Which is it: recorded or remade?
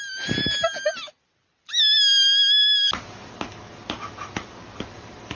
recorded